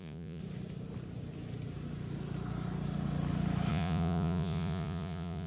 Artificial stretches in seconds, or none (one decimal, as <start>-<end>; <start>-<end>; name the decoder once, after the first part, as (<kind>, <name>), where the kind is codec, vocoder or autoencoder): 0.0-0.4 (vocoder, Vocos); 3.7-5.5